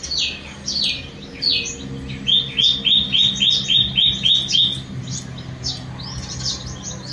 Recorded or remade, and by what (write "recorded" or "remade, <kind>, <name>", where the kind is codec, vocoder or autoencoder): recorded